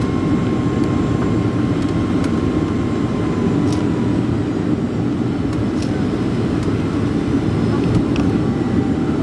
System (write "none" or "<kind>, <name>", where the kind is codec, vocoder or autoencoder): none